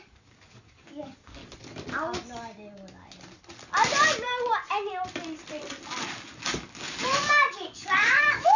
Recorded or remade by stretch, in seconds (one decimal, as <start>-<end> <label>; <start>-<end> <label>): 0.0-1.4 remade; 1.4-5.8 recorded; 5.8-8.6 remade